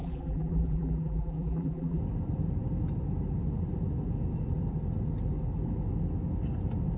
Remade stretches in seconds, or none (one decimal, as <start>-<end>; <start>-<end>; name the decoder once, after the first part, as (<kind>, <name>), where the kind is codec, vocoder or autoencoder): 0.0-2.0 (vocoder, BigVGAN v2)